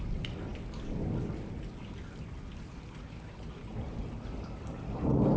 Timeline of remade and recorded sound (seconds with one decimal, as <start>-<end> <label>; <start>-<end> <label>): 0.0-5.4 recorded